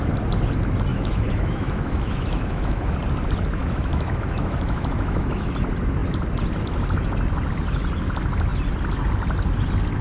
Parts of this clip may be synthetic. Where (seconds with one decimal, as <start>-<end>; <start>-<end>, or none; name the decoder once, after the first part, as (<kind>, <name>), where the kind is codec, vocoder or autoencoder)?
0.9-2.9 (autoencoder, DAC-VAE); 3.6-5.5